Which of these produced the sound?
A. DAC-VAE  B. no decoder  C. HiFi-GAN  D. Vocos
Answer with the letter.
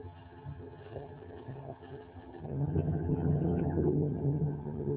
C